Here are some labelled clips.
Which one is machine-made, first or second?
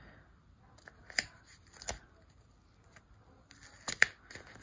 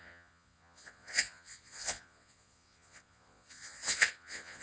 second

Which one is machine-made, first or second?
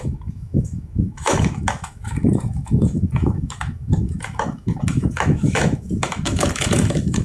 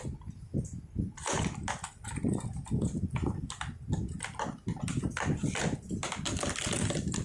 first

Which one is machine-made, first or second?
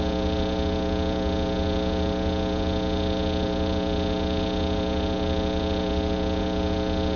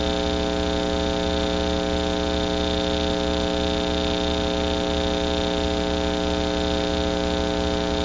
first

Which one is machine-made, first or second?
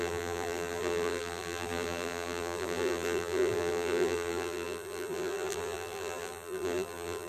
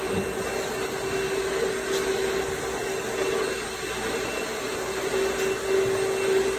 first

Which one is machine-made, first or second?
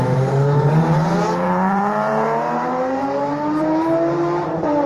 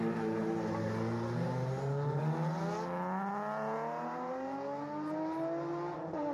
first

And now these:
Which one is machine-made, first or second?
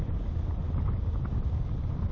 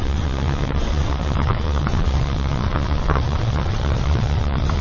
second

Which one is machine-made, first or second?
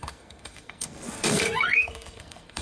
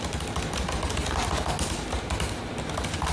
first